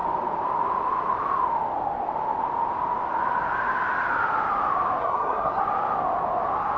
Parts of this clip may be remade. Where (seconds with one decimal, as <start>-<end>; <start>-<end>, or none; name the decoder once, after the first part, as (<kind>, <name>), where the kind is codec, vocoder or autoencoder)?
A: 5.0-5.6 (codec, SNAC)